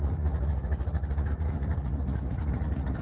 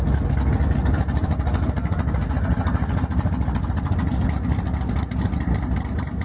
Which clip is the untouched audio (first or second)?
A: second